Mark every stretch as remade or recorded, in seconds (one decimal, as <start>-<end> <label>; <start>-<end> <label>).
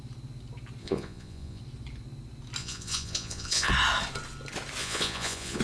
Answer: 0.0-0.8 recorded; 0.8-1.6 remade; 1.6-2.6 recorded; 2.6-3.7 remade; 3.7-4.8 recorded; 4.8-5.6 remade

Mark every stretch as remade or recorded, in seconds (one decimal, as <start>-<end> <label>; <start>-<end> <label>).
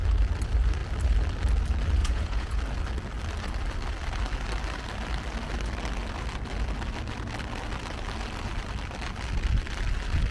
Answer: 0.0-2.0 recorded; 2.0-2.6 remade; 2.6-10.3 recorded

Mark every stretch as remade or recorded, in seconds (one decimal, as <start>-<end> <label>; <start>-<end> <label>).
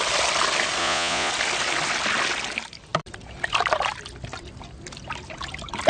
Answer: 0.0-0.8 recorded; 0.8-1.3 remade; 1.3-5.9 recorded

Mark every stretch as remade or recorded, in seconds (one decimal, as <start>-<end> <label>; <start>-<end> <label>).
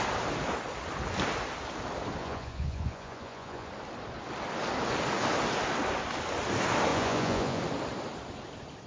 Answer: 0.0-2.2 recorded; 2.2-3.7 remade; 3.7-6.9 recorded; 6.9-7.6 remade; 7.6-8.9 recorded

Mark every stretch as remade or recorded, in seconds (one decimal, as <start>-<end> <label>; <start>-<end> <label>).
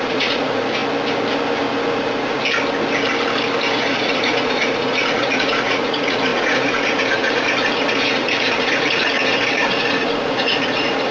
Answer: 0.0-0.8 remade; 0.8-2.0 recorded; 2.0-2.4 remade; 2.4-3.7 recorded; 3.7-11.1 remade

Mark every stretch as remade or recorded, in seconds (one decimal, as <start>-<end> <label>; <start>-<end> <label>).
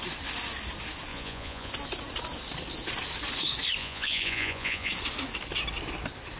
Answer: 0.0-1.1 recorded; 1.1-1.7 remade; 1.7-3.8 recorded; 3.8-4.9 remade; 4.9-6.4 recorded